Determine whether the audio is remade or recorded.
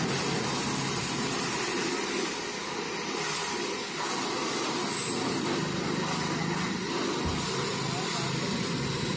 recorded